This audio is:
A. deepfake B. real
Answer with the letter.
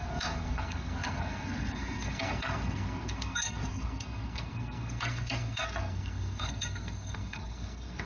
A